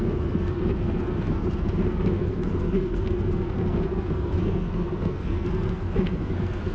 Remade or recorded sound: remade